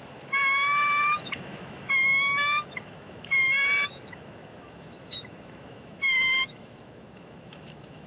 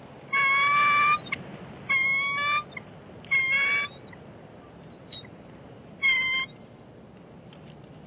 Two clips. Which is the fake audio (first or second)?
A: first